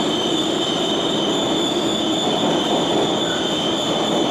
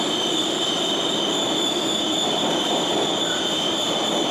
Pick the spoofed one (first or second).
second